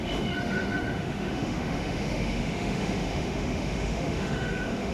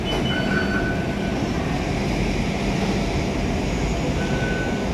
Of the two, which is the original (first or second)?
second